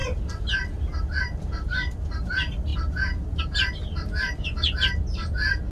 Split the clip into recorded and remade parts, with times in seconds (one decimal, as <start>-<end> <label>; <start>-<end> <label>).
0.0-5.7 recorded